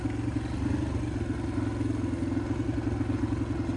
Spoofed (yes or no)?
no